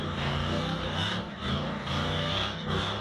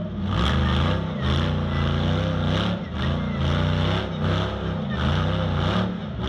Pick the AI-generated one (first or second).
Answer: first